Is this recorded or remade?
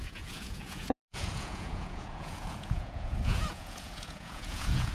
remade